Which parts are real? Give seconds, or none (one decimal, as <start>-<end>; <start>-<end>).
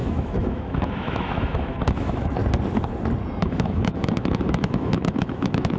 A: 2.4-3.4